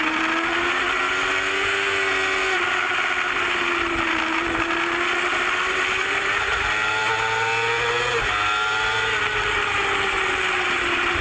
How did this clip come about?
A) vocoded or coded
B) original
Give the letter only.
B